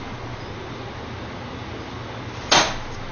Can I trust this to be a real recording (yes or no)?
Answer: yes